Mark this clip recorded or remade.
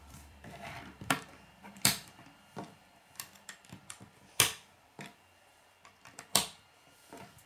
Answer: remade